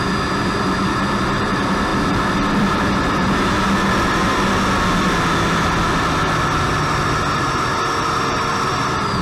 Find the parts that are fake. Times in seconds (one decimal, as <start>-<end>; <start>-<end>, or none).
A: none